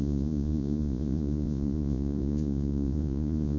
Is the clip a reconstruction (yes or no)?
yes